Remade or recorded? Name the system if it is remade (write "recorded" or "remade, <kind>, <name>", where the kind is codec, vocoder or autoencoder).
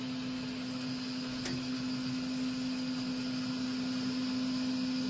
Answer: recorded